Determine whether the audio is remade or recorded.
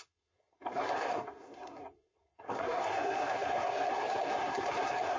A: remade